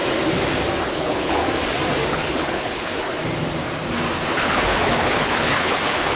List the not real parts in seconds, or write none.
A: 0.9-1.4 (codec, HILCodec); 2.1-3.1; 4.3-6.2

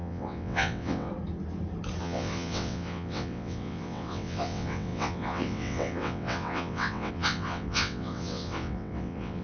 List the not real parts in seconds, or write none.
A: 0.0-1.1 (vocoder, WaveNeXt); 2.0-9.4

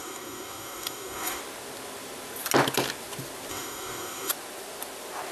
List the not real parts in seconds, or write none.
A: 0.0-1.4 (codec, DAC); 3.5-4.3

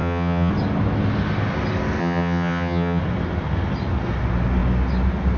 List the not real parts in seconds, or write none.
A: 0.0-0.5 (vocoder, HiFi-GAN); 2.0-3.0

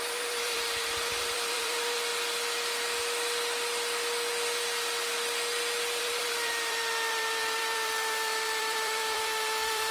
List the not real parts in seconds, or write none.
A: 0.0-2.1 (vocoder, BigVGAN v2); 6.0-9.9

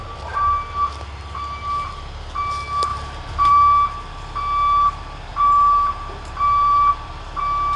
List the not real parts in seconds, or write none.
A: 2.9-3.5 (vocoder, BigVGAN v2); 5.3-7.1